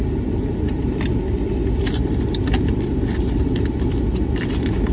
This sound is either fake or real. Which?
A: real